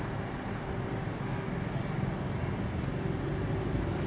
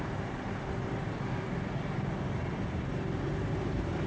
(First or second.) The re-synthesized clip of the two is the second